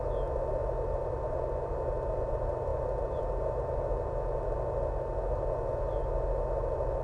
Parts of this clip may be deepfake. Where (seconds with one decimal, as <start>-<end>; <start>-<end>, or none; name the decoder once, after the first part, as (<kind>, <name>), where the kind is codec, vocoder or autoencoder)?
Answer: none